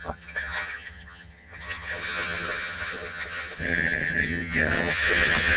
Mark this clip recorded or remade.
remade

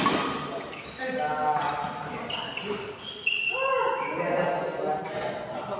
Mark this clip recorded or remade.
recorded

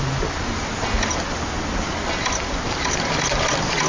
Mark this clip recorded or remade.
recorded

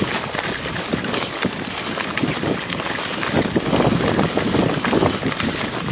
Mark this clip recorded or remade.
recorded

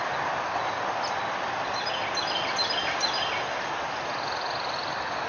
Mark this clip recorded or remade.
recorded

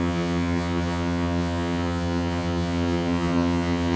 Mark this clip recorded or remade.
remade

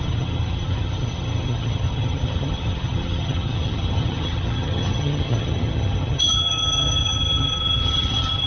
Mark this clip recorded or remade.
remade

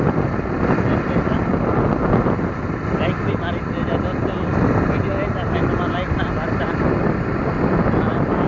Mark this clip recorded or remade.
recorded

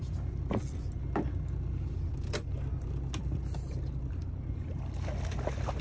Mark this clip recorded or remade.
recorded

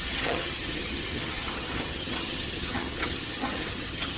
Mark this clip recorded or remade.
remade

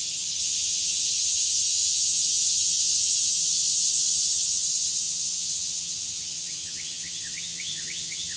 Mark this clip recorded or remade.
remade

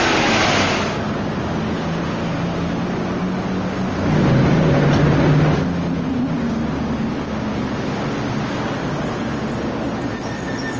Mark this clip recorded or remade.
recorded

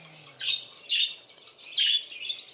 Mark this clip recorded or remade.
recorded